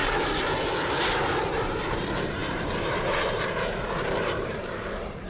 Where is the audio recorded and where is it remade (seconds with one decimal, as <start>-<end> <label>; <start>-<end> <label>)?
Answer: 0.0-1.3 recorded; 1.3-5.3 remade